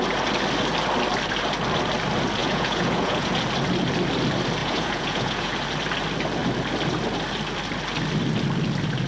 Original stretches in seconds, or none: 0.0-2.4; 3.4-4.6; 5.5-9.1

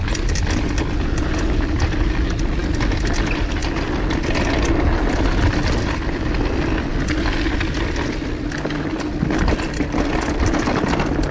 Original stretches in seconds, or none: 0.0-11.3

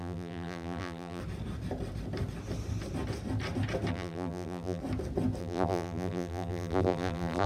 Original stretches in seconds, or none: 1.2-3.9; 4.8-5.4

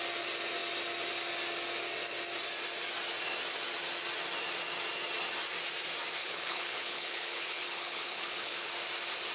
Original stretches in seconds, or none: 0.0-6.2; 8.7-9.3

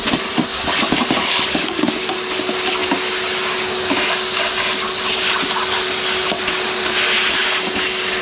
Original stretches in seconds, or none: 0.0-0.5; 1.9-8.2

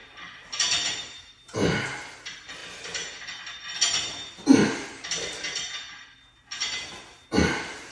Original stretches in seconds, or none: 0.0-7.9